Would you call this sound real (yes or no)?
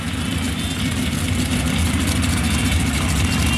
yes